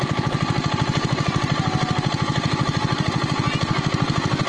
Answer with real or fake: real